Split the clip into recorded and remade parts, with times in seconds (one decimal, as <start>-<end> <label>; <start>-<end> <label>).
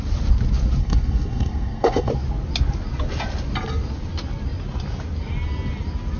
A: 0.0-0.8 recorded; 0.8-2.1 remade; 2.1-6.2 recorded